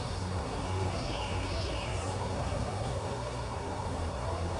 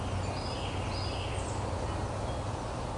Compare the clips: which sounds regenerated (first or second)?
first